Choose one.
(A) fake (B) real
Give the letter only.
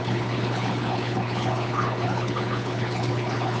A